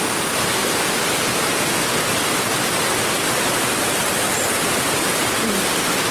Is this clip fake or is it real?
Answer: real